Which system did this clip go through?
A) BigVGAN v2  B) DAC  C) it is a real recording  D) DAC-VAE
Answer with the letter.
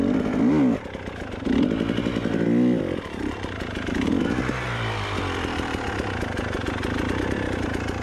C